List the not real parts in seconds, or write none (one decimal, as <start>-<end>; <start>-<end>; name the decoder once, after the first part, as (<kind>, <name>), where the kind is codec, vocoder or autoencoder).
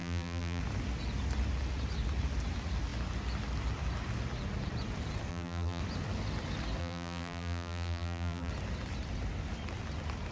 0.0-0.6 (vocoder, BigVGAN v2); 5.3-5.8; 6.8-8.5